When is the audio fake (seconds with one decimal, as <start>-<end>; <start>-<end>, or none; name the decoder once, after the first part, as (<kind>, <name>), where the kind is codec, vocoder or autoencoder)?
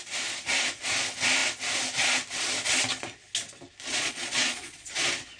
3.9-4.9 (vocoder, Vocos)